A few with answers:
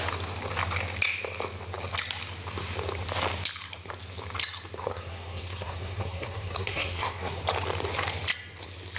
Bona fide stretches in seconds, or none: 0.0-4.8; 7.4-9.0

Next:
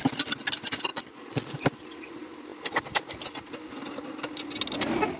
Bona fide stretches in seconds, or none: 0.0-0.9; 1.5-5.2

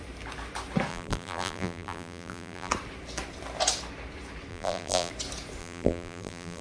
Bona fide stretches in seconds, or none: 0.0-0.9; 2.7-4.5; 5.1-5.6

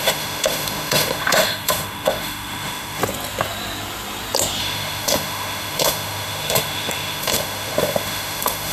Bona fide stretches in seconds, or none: 3.0-4.6

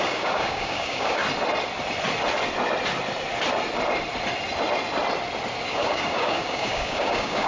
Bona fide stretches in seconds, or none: 1.2-5.7

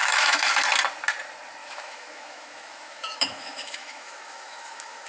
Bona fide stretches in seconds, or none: 0.5-1.6